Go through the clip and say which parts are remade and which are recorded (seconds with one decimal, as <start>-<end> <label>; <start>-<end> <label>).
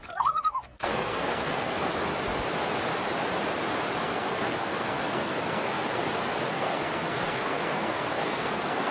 0.0-1.9 remade; 1.9-4.0 recorded; 4.0-6.0 remade; 6.0-6.5 recorded; 6.5-8.9 remade